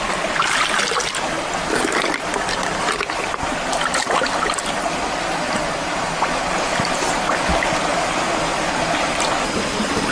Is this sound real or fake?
real